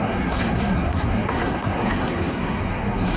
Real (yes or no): no